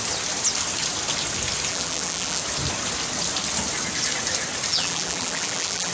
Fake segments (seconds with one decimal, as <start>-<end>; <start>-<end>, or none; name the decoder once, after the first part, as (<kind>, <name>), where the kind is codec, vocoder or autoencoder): 1.7-2.4 (vocoder, BigVGAN v2); 4.7-5.9